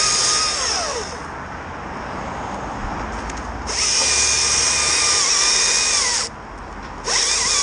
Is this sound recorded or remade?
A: recorded